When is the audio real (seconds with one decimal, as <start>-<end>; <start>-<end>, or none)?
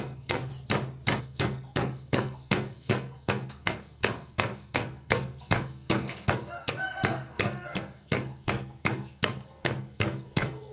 0.5-1.2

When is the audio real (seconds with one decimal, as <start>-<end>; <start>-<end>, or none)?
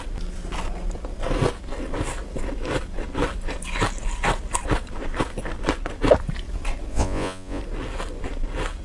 0.0-6.9; 7.6-8.8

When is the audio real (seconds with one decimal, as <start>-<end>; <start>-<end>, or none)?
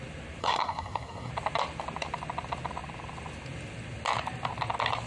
0.0-0.4; 1.3-5.1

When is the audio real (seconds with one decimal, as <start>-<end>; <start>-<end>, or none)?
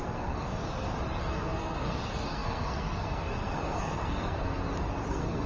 0.6-1.2; 4.6-5.1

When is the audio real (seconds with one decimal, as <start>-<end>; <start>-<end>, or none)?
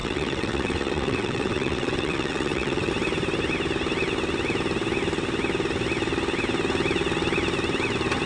2.9-8.3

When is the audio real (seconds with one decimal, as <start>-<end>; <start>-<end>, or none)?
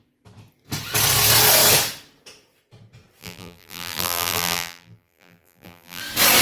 0.0-3.2; 6.0-6.4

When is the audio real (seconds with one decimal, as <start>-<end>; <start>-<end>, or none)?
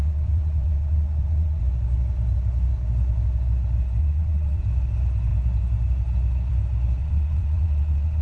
1.6-4.0; 4.6-7.0